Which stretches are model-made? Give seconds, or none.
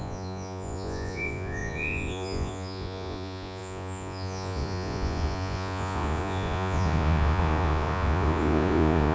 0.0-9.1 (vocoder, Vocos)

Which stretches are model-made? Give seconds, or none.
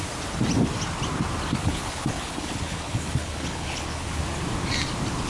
1.6-4.2 (codec, HILCodec)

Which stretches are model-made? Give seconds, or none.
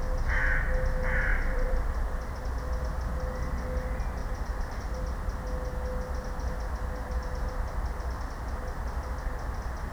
1.3-2.4 (vocoder, BigVGAN v2); 4.2-5.0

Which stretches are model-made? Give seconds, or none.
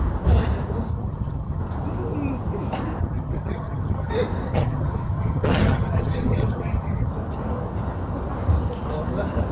0.9-1.6 (vocoder, HiFi-GAN); 3.0-4.1; 4.5-7.1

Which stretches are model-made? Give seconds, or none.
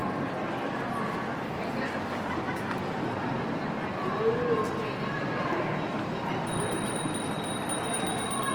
none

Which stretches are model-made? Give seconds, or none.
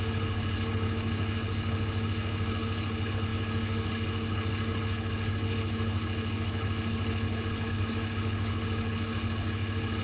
0.0-10.0 (codec, HILCodec)